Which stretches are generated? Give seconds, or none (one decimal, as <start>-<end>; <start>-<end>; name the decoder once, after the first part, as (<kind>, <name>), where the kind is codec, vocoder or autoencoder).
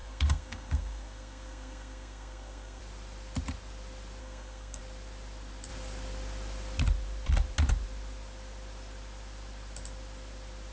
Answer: 0.0-2.8 (codec, SNAC); 4.2-4.8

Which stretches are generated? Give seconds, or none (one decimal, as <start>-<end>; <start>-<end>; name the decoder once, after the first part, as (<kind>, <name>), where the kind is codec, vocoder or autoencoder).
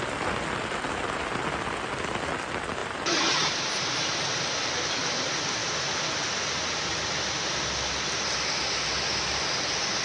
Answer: 2.8-4.4 (vocoder, BigVGAN v2)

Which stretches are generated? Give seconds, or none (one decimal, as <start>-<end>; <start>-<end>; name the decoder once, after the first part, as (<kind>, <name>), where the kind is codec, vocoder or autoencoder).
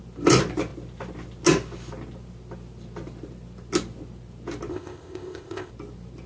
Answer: 4.7-5.7 (codec, ZipCodec)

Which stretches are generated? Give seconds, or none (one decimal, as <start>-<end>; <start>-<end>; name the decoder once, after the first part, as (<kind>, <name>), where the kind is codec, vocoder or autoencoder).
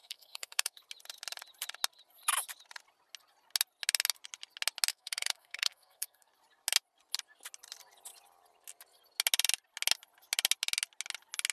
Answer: 0.0-0.8 (codec, SNAC); 4.9-6.3